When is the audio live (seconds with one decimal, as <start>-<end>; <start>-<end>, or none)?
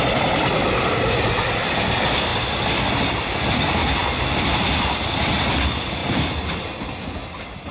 0.6-1.8; 3.8-4.4; 6.0-7.7